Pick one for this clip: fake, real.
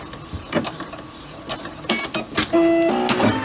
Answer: real